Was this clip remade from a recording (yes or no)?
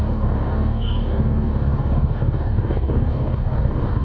yes